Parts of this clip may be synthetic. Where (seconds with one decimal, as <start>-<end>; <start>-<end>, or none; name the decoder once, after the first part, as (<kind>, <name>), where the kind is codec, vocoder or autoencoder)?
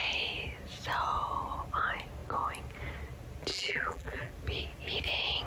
3.5-4.3 (vocoder, BigVGAN v2)